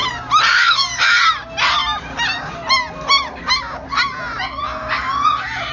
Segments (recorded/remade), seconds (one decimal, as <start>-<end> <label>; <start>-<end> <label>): 0.0-0.5 recorded; 0.5-1.2 remade; 1.2-5.7 recorded